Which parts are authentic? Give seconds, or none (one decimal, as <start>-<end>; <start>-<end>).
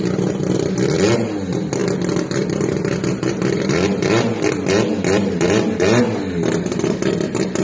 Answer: 0.0-7.6